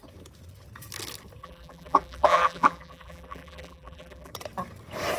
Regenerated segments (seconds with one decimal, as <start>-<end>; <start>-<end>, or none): 1.4-4.3